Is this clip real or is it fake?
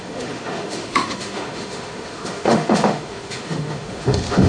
fake